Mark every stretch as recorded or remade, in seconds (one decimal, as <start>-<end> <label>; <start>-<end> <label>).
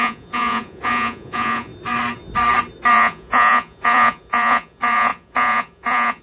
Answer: 0.0-1.7 remade; 1.7-2.9 recorded; 2.9-6.2 remade